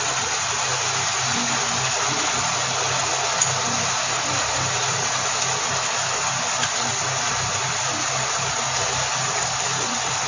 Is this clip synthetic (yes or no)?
no